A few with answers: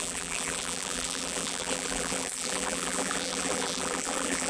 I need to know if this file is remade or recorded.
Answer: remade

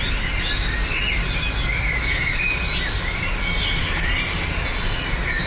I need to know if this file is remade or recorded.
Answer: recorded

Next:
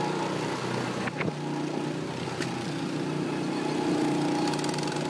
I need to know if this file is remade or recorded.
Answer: recorded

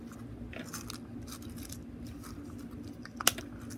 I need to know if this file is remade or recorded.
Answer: recorded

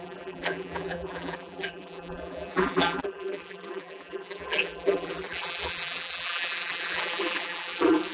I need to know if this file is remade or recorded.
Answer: remade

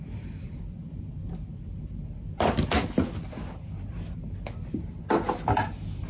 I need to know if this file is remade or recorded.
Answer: recorded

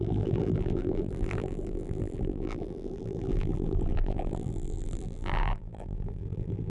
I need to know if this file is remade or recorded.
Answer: remade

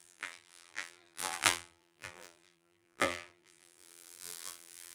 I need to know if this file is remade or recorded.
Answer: remade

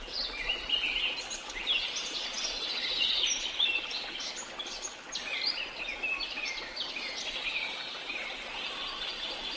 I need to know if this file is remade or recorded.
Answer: recorded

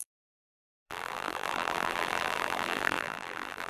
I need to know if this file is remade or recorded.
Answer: remade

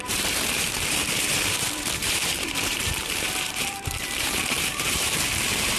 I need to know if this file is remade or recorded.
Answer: remade